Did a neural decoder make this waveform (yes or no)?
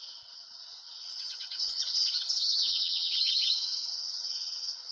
yes